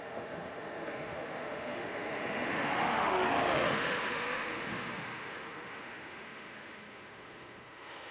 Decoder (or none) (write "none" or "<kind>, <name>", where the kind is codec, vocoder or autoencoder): autoencoder, DAC-VAE